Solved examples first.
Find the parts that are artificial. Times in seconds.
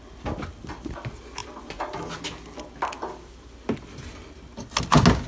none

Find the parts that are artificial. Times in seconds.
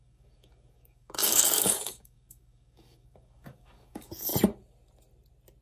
0.0-4.3 (codec, DAC)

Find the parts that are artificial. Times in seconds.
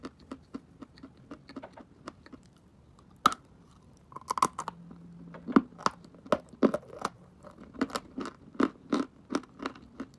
none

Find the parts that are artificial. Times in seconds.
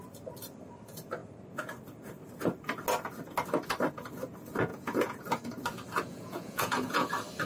4.7-5.2 (vocoder, Vocos); 6.1-7.1